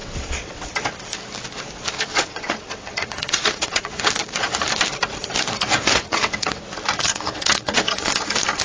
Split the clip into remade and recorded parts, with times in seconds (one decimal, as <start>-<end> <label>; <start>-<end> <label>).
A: 0.0-0.7 remade; 0.7-2.1 recorded; 2.1-4.1 remade; 4.1-5.8 recorded; 5.8-6.6 remade; 6.6-7.1 recorded; 7.1-8.1 remade; 8.1-8.6 recorded